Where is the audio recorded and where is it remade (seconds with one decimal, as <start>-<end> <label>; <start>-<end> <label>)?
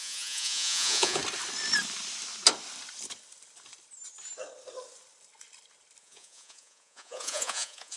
0.0-1.2 remade; 1.2-6.0 recorded; 6.0-8.0 remade